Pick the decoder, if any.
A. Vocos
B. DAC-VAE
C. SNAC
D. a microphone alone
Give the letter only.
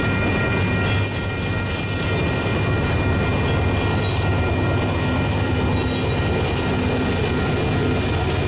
D